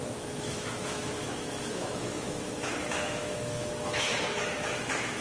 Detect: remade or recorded remade